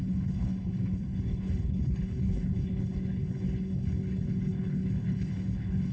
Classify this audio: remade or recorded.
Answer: remade